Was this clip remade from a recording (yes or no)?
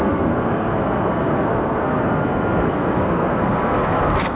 yes